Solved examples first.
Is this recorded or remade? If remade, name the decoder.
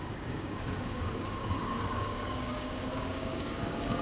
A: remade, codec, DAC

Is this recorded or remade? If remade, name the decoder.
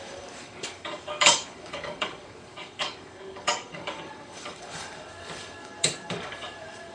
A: remade, codec, DAC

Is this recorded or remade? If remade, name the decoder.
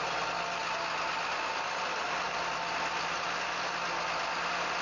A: recorded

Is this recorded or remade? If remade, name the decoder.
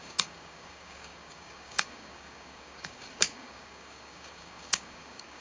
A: remade, codec, DAC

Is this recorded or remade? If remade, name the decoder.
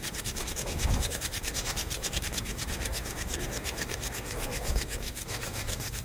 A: remade, codec, DAC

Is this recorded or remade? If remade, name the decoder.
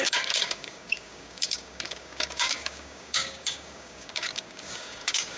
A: remade, codec, DAC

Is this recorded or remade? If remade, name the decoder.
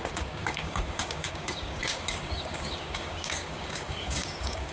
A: remade, codec, DAC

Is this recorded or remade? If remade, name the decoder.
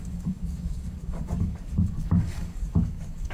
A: remade, codec, DAC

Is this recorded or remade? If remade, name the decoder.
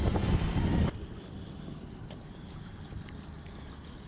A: recorded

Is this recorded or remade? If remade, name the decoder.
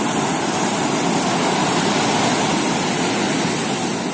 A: recorded